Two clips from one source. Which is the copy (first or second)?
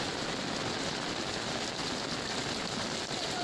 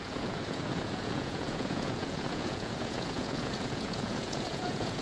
second